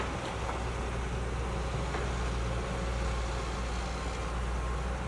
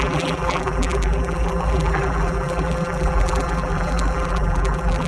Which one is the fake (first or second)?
second